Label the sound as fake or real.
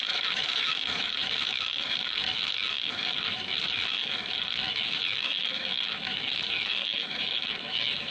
fake